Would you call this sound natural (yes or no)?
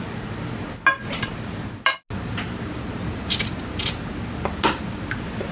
yes